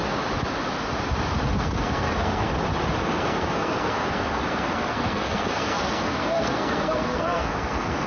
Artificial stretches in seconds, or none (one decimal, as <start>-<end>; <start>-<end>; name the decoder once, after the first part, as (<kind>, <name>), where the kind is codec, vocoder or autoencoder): 1.6-2.5 (codec, SNAC); 3.0-8.1